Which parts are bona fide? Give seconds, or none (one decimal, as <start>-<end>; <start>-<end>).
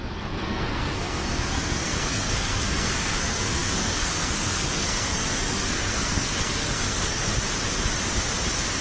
7.3-8.8